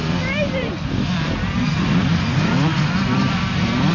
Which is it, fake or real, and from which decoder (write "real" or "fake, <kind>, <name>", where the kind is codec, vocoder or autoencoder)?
fake, vocoder, BigVGAN v2